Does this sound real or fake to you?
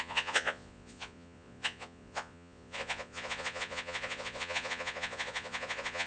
fake